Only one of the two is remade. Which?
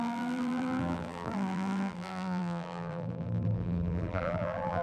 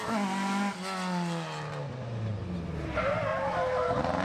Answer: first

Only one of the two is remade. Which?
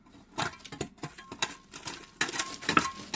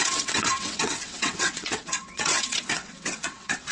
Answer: second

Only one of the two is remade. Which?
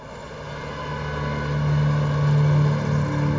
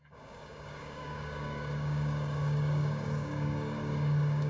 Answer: second